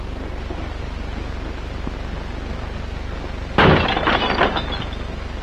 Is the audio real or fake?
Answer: real